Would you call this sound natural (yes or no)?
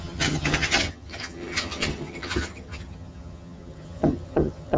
no